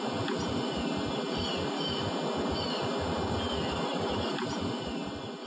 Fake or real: real